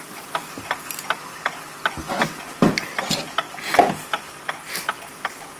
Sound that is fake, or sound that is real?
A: real